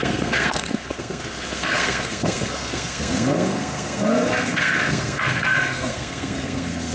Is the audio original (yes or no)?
no